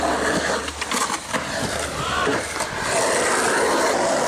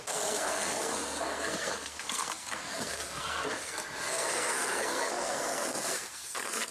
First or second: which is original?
first